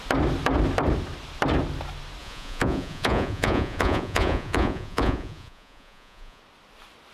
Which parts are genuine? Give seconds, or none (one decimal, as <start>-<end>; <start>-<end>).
0.0-2.2; 6.4-7.1